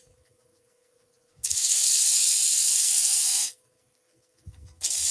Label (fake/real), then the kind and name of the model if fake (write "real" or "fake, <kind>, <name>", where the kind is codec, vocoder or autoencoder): fake, codec, SNAC